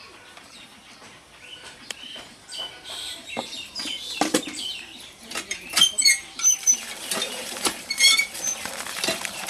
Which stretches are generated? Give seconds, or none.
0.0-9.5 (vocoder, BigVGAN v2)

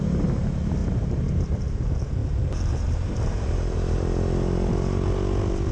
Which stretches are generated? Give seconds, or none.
0.8-1.4 (vocoder, BigVGAN v2); 2.2-4.0

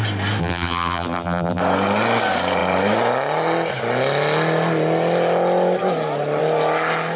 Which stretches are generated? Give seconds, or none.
0.4-1.6 (vocoder, BigVGAN v2)